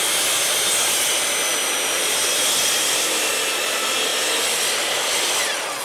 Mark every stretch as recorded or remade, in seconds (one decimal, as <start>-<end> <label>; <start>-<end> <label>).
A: 0.0-1.5 recorded; 1.5-3.3 remade; 3.3-4.1 recorded; 4.1-5.8 remade